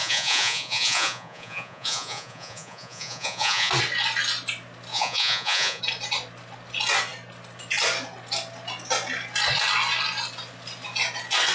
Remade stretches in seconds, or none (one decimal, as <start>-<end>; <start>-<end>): 0.0-3.7; 4.9-5.8